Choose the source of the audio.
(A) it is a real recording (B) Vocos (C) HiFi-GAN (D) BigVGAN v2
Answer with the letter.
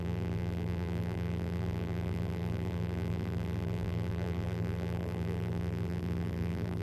D